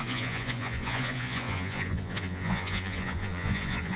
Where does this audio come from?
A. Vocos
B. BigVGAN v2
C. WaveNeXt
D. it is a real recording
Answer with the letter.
A